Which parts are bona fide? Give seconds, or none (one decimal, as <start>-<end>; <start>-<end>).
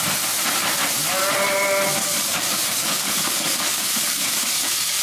0.0-2.0